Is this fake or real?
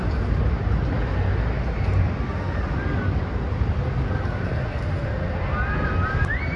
real